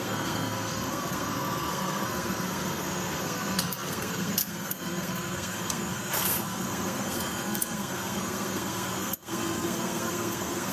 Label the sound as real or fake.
fake